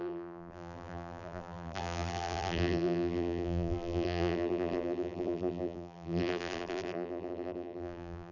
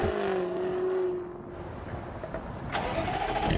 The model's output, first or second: first